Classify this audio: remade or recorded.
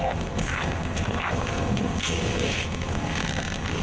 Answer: remade